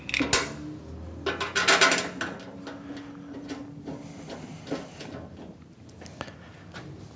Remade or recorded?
recorded